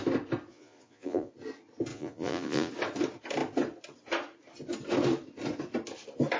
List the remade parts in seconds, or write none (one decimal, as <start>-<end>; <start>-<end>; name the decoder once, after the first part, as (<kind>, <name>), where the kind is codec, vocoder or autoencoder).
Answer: 0.5-1.3 (vocoder, Vocos); 1.9-2.7